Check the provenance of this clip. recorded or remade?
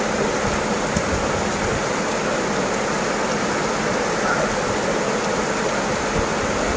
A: recorded